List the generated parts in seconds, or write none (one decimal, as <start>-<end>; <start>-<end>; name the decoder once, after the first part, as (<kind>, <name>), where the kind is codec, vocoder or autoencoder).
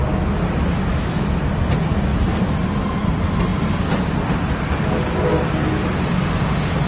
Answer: 0.9-1.5 (autoencoder, DAC-VAE)